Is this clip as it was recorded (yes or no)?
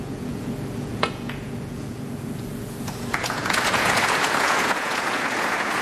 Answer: no